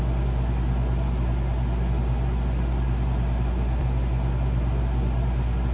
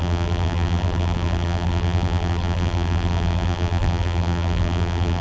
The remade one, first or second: second